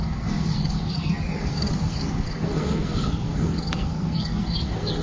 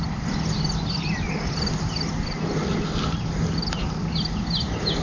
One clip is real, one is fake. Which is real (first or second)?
second